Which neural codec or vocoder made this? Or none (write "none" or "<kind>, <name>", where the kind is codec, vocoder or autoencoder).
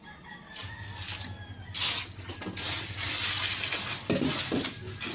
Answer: none